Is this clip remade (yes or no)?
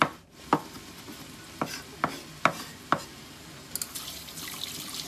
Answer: no